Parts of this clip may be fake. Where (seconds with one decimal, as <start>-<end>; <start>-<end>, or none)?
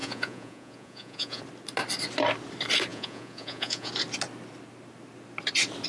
0.0-1.4; 2.9-3.9